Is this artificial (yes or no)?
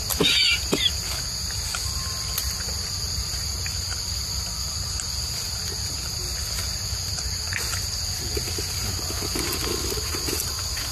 no